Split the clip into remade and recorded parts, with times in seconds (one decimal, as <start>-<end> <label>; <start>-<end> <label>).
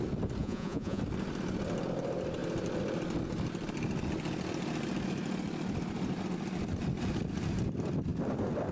0.0-0.4 recorded; 0.4-1.0 remade; 1.0-8.7 recorded